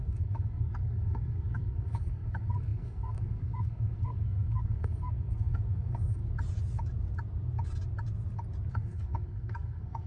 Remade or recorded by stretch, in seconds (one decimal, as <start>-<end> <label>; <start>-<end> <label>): 0.0-6.2 remade; 6.2-8.7 recorded; 8.7-10.1 remade